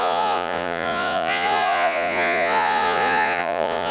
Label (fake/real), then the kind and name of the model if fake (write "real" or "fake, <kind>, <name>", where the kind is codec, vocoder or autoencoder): fake, vocoder, Vocos